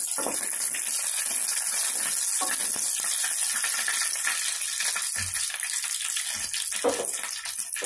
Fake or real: real